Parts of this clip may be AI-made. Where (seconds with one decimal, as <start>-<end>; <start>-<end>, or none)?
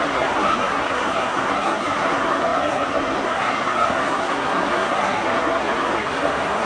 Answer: 0.0-6.7